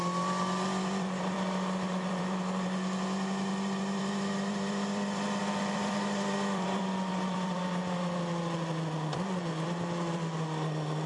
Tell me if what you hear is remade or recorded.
remade